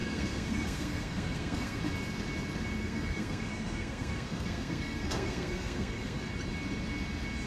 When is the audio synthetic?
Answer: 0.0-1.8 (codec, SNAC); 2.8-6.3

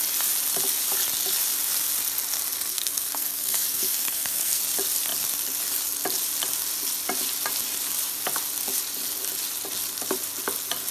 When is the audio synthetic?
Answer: 2.7-4.6 (codec, SNAC)

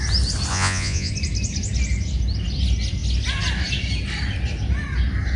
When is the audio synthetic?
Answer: 0.5-1.1 (vocoder, Vocos)

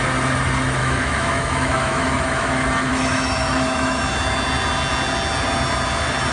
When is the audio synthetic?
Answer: 0.8-2.5 (autoencoder, DAC-VAE); 2.9-4.0

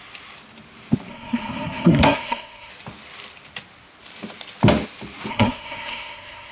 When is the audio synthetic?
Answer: 1.1-2.7 (codec, SNAC); 5.3-6.5

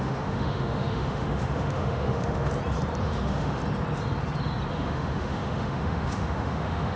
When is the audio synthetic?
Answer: 0.0-2.5 (autoencoder, DAC-VAE); 3.0-3.6; 4.7-7.0

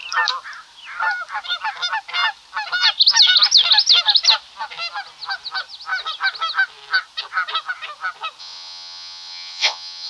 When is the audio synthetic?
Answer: 8.4-10.1 (vocoder, WaveNeXt)